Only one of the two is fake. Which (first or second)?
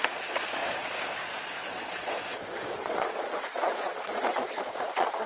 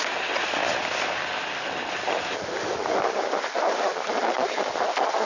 first